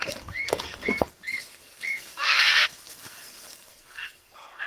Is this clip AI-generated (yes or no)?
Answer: yes